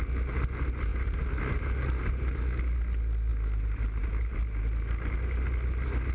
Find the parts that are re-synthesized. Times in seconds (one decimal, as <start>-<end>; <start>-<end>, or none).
none